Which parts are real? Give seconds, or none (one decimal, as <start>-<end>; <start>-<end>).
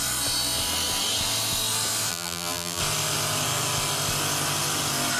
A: 0.0-2.1; 2.8-5.2